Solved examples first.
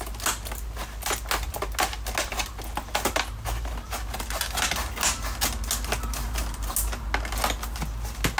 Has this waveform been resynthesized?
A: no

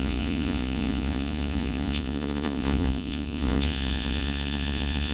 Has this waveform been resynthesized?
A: yes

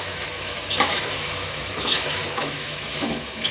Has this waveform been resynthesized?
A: yes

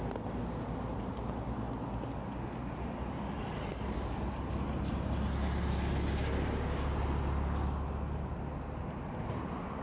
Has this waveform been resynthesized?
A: no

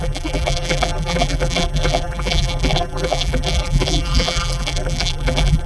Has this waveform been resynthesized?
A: yes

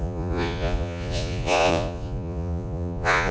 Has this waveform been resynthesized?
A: yes